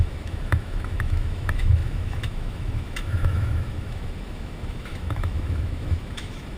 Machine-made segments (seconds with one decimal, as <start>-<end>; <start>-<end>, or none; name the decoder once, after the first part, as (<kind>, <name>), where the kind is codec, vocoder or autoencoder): 0.0-6.6 (autoencoder, DAC-VAE)